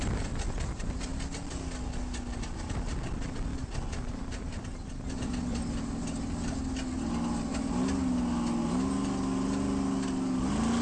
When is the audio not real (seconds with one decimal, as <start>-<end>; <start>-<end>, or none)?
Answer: 3.5-6.0